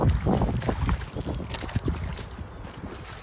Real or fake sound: real